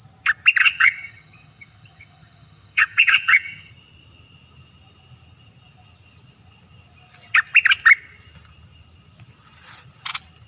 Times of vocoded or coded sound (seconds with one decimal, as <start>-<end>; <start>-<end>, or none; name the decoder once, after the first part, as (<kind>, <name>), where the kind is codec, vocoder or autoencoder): 0.6-3.7 (vocoder, HiFi-GAN)